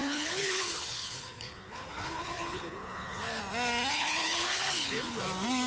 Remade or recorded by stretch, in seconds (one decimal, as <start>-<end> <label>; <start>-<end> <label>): 0.0-3.4 remade; 3.4-3.9 recorded; 3.9-5.2 remade; 5.2-5.7 recorded